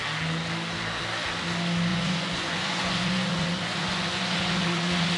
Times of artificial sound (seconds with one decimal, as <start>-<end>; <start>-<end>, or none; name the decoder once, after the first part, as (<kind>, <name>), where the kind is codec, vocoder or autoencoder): 1.9-5.2 (vocoder, Vocos)